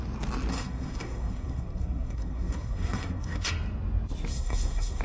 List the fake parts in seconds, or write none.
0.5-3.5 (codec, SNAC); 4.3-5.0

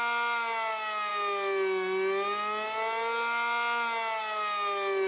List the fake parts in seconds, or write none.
none

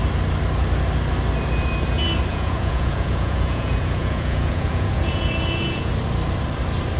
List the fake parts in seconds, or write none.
2.3-5.9 (vocoder, Vocos)